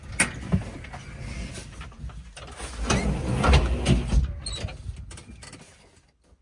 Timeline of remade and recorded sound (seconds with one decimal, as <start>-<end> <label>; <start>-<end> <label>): 0.0-6.4 recorded

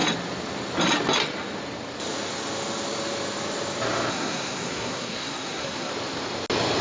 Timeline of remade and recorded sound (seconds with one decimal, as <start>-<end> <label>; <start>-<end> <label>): 0.0-4.1 recorded; 4.1-5.9 remade; 5.9-6.8 recorded

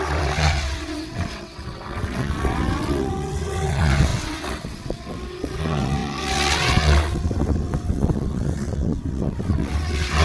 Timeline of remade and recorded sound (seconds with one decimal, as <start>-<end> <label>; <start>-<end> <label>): 0.0-10.2 remade

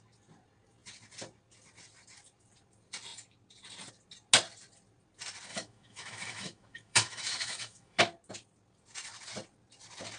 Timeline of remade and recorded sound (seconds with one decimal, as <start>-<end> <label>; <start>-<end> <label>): 0.0-5.5 recorded; 5.5-8.0 remade; 8.0-10.2 recorded

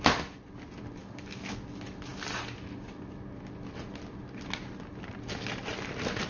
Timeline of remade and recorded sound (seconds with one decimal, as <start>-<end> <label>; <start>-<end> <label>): 0.0-1.0 recorded; 1.0-1.6 remade; 1.6-6.3 recorded